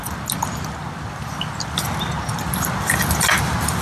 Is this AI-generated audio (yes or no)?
no